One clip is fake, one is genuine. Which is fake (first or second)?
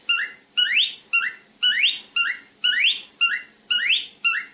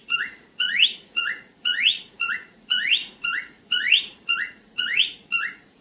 second